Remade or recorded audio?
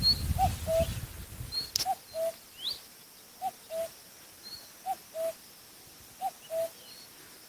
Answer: recorded